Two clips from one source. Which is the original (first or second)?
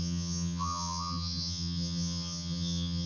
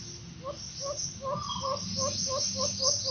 second